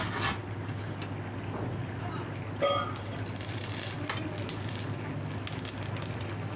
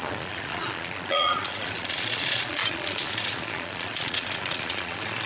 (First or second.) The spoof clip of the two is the second